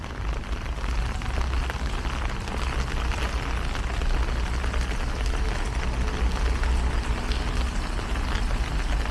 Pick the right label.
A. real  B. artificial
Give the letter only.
A